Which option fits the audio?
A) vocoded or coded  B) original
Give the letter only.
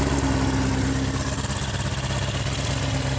B